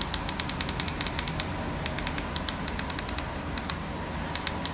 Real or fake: real